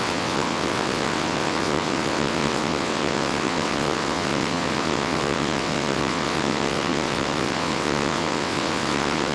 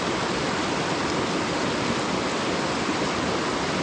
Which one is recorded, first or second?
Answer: second